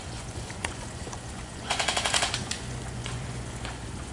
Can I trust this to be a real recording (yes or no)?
no